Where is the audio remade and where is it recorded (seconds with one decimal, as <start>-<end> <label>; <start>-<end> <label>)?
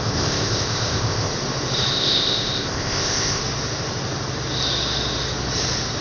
0.0-1.3 remade; 1.3-1.9 recorded; 1.9-3.4 remade; 3.4-6.0 recorded